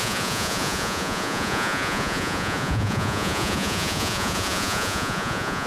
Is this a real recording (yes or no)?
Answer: no